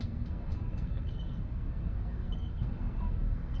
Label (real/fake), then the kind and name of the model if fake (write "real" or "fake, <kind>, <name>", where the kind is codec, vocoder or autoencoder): fake, codec, SNAC